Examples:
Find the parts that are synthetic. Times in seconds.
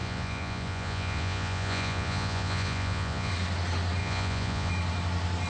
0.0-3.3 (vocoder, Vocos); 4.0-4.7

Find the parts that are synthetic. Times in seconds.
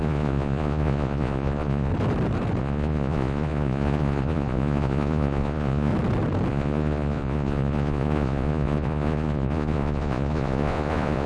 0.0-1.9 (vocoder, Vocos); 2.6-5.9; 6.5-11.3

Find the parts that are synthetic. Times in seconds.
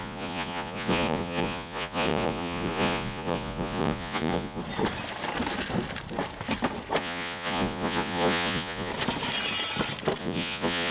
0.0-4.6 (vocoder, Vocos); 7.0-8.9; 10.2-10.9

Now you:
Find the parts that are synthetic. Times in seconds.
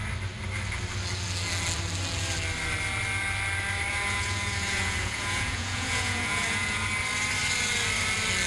3.9-6.9 (vocoder, Vocos)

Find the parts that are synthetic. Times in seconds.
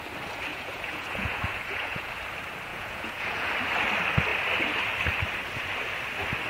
0.5-2.1 (vocoder, Vocos); 2.7-3.5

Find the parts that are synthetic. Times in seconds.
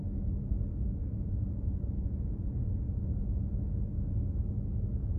0.7-3.8 (vocoder, Vocos)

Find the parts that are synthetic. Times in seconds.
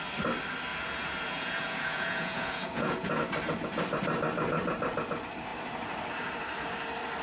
0.7-3.2 (vocoder, Vocos)